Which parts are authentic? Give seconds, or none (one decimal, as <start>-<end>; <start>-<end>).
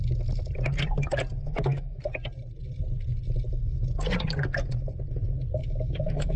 0.0-1.5; 2.0-5.6